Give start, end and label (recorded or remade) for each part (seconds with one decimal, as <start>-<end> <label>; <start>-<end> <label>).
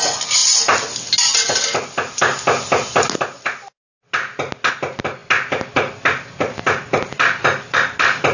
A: 0.0-8.3 recorded